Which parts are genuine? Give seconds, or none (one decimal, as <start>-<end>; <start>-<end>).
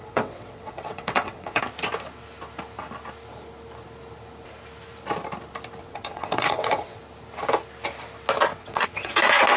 1.6-5.8; 7.0-8.5; 9.1-9.6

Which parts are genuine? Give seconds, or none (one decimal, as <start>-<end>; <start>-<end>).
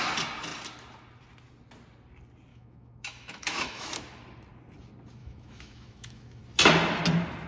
0.0-2.5; 3.9-5.2; 6.4-7.5